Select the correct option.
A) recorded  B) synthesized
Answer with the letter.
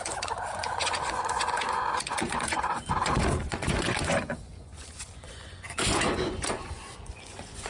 B